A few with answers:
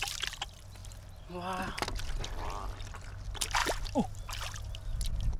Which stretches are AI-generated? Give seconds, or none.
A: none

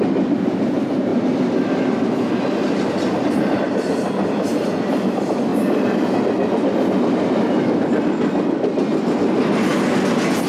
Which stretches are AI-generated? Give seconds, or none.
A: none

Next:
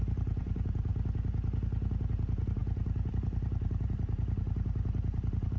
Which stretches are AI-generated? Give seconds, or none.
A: 0.0-0.9 (vocoder, BigVGAN v2); 2.1-5.6

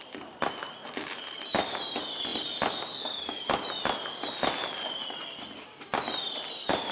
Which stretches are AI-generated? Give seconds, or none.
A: none